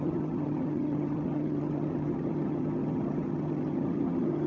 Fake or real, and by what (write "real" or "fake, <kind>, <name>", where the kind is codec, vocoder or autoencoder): fake, vocoder, HiFi-GAN